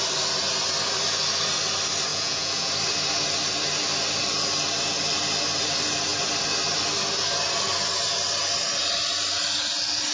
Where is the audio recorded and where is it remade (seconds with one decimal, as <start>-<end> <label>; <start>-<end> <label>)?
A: 0.0-2.1 recorded; 2.1-2.7 remade; 2.7-10.1 recorded